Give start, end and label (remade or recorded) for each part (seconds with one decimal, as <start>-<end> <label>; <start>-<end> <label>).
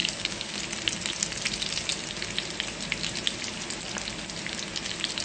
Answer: 0.0-0.6 remade; 0.6-5.2 recorded